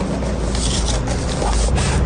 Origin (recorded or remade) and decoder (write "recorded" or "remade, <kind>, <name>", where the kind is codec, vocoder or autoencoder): recorded